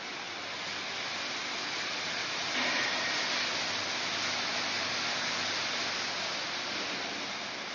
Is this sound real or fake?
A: real